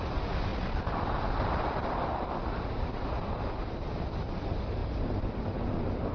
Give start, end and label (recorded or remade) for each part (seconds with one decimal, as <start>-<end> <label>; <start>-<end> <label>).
0.0-6.1 recorded